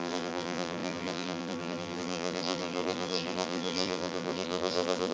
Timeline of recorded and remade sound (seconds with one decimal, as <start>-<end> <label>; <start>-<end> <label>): 0.0-5.1 remade